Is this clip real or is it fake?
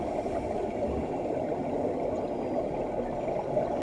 real